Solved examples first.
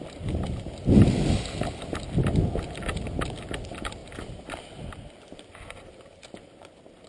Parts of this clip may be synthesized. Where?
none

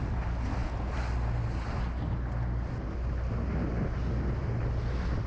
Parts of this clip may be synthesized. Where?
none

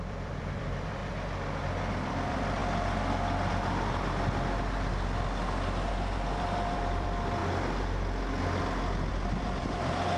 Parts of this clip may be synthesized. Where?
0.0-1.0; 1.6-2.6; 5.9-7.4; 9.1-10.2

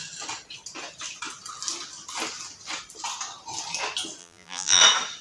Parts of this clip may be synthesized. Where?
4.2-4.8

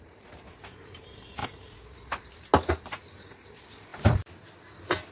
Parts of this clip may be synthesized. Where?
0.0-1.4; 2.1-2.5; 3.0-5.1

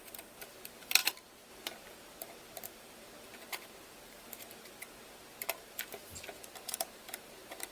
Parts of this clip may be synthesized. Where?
0.0-7.7